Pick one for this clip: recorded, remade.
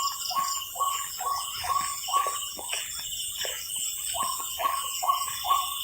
remade